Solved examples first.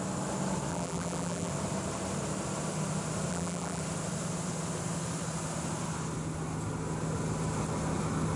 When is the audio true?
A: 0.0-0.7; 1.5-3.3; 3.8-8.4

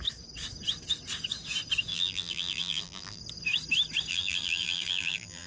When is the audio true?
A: 0.0-1.9; 3.2-4.1

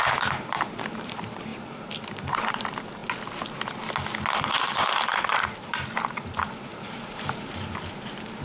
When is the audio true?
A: 3.0-4.4

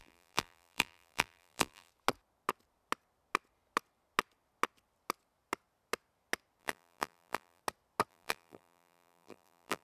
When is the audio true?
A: 1.9-6.6; 7.6-8.1

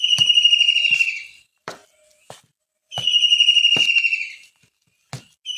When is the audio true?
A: 1.8-5.6